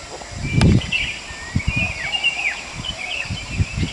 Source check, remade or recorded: recorded